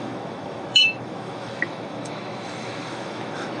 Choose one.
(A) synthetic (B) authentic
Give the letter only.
A